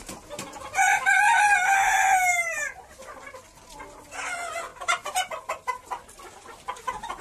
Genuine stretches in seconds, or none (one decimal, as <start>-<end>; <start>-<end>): 0.0-7.2